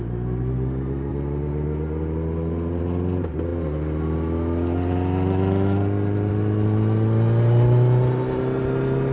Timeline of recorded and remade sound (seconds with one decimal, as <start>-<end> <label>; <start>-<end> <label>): 0.0-9.1 recorded